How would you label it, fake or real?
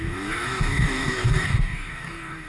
fake